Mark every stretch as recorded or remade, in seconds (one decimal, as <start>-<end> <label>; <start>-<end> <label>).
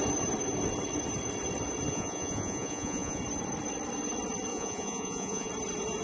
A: 0.0-1.9 recorded; 1.9-3.2 remade; 3.2-4.5 recorded; 4.5-5.5 remade; 5.5-6.0 recorded